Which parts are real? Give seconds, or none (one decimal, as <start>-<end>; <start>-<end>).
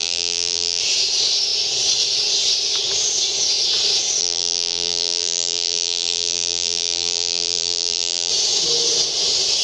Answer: 0.8-4.2; 8.3-9.6